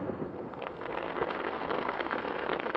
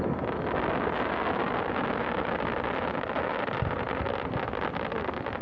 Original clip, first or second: second